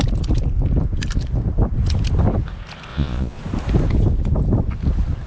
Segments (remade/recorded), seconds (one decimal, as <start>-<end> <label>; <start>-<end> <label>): 0.0-2.9 recorded; 2.9-3.4 remade; 3.4-5.3 recorded